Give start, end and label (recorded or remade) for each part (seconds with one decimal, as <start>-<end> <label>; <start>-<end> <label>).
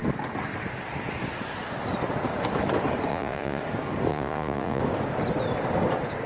0.0-3.1 recorded; 3.1-3.6 remade; 3.6-4.1 recorded; 4.1-4.8 remade; 4.8-6.3 recorded